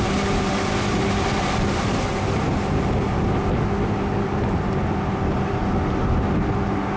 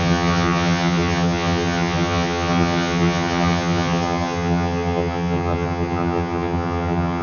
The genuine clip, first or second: first